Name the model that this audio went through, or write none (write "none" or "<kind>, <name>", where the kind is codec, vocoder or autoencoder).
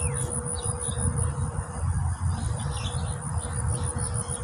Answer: none